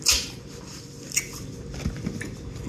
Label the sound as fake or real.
real